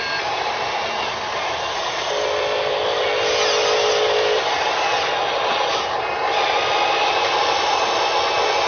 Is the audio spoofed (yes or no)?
no